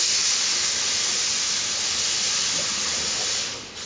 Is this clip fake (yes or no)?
no